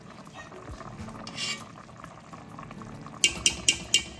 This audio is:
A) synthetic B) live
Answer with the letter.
B